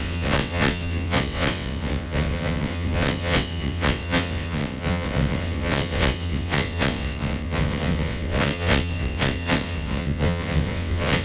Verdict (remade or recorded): remade